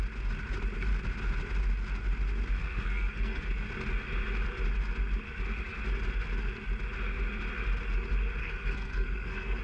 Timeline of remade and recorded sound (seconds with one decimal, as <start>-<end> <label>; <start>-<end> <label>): 0.0-2.6 recorded; 2.6-3.4 remade; 3.4-8.4 recorded; 8.4-9.6 remade